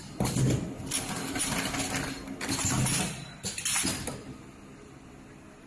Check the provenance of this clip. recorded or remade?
recorded